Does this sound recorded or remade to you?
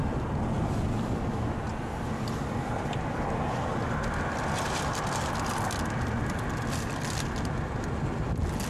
recorded